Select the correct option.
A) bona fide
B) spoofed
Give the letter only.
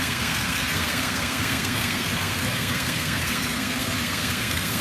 B